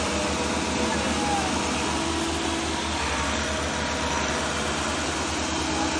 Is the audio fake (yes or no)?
no